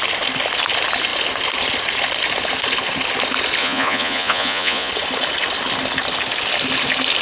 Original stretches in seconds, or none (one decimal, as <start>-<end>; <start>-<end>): 0.0-3.6; 4.9-7.2